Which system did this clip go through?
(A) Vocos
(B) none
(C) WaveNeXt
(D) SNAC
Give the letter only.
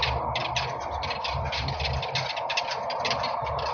B